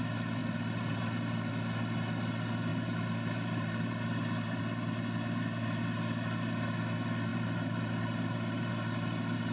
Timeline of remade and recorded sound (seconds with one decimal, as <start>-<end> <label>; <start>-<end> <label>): 0.0-0.4 recorded; 0.4-1.5 remade; 1.5-2.7 recorded; 2.7-4.6 remade; 4.6-7.3 recorded; 7.3-8.7 remade; 8.7-9.5 recorded